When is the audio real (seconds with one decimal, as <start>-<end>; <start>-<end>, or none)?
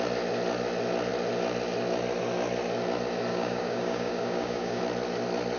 0.0-3.3; 4.8-5.6